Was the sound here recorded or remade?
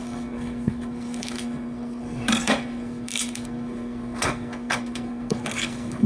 remade